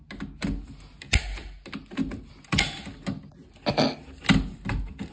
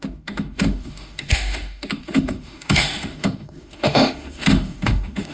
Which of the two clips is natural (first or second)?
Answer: first